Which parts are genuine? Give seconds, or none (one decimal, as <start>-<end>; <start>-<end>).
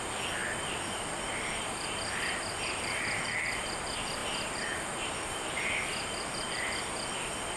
4.2-6.5